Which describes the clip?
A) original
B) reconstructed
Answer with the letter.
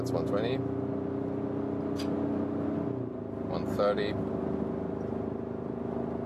A